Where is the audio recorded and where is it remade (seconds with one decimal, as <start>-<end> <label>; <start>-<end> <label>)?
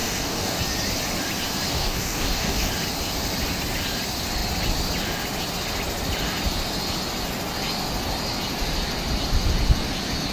0.0-0.6 remade; 0.6-1.7 recorded; 1.7-2.7 remade; 2.7-10.3 recorded